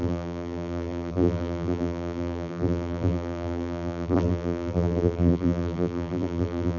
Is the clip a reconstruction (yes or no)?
yes